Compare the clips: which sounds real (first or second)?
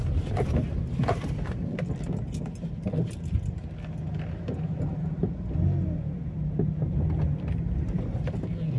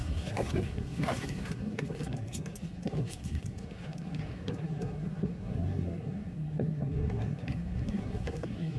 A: first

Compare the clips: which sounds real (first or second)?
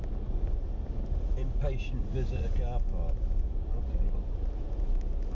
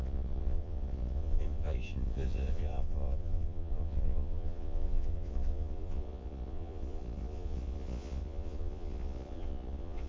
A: first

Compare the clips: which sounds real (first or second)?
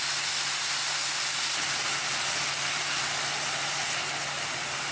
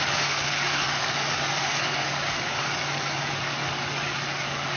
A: first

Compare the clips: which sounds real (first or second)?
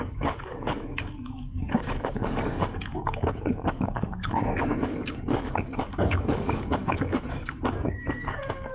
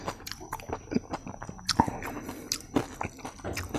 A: second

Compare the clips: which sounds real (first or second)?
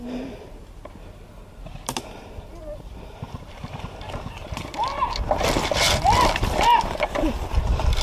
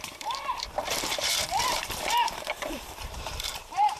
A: first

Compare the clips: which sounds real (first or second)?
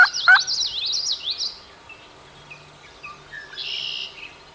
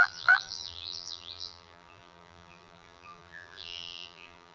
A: first